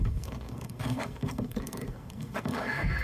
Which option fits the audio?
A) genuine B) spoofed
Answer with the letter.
B